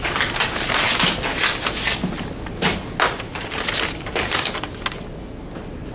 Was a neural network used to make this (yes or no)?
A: no